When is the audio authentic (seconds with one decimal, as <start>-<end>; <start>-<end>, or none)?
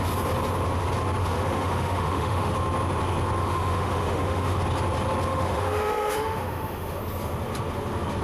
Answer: 0.0-1.2; 2.5-3.4; 4.6-5.3; 7.0-8.2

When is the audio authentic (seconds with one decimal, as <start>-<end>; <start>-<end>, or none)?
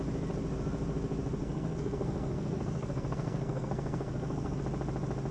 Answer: 0.0-1.4; 4.6-5.3